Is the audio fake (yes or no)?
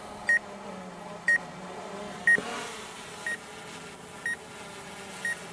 no